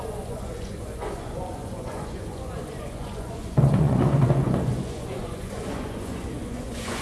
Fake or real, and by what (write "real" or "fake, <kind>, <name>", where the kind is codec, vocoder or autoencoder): fake, vocoder, Vocos